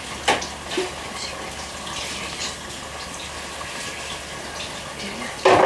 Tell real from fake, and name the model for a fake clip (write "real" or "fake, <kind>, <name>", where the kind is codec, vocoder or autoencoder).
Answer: real